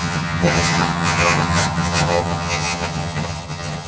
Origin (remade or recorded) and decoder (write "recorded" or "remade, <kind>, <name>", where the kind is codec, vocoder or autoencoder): remade, vocoder, HiFi-GAN